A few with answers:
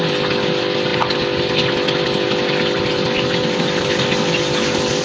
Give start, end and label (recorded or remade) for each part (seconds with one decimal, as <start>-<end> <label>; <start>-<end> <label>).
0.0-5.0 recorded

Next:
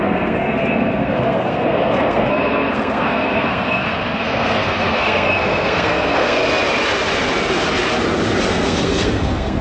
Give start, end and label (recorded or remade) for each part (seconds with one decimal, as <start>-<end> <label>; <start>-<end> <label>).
0.0-6.4 remade; 6.4-8.5 recorded; 8.5-9.6 remade

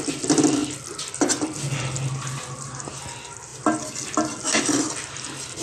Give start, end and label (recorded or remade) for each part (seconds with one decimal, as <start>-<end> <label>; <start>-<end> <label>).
0.0-5.6 recorded

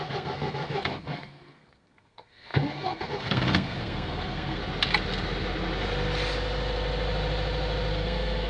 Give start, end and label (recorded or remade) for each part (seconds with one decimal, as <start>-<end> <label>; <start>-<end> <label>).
0.0-4.6 remade; 4.6-7.9 recorded; 7.9-8.5 remade

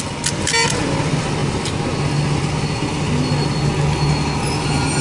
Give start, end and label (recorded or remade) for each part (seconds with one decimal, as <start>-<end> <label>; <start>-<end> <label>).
0.0-5.0 recorded

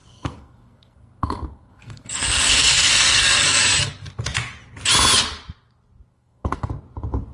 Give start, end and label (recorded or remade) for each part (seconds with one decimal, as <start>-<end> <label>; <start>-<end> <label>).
0.0-3.6 remade; 3.6-6.1 recorded; 6.1-6.7 remade; 6.7-7.3 recorded